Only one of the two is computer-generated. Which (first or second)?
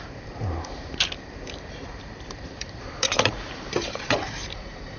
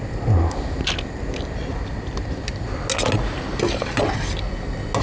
first